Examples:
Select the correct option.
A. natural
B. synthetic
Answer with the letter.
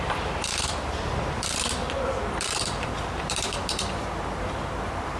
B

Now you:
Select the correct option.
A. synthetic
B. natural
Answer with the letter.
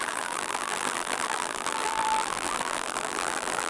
A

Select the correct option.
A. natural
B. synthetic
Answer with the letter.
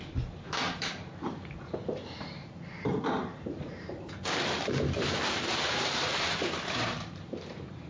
B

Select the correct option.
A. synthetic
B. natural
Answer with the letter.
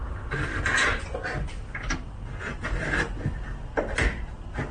B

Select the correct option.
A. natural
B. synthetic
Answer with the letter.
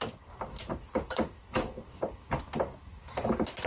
A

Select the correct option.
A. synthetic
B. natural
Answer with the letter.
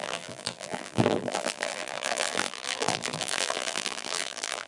A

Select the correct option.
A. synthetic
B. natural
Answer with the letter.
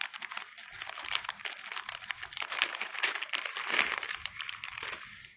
A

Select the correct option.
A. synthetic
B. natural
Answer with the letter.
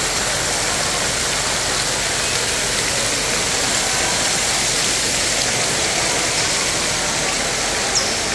B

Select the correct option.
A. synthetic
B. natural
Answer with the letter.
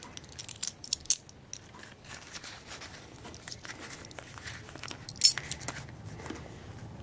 B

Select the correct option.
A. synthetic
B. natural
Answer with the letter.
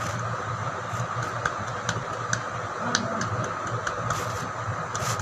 B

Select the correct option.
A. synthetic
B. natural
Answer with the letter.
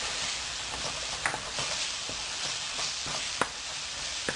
A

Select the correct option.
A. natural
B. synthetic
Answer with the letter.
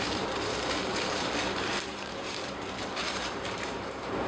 B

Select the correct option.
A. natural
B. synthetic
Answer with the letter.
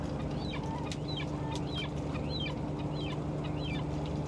A